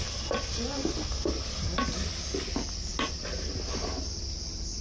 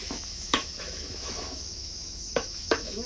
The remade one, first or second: second